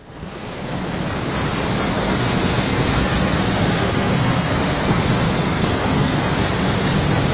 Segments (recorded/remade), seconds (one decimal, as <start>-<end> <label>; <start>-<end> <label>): 0.0-0.8 remade; 0.8-1.9 recorded; 1.9-6.2 remade; 6.2-7.3 recorded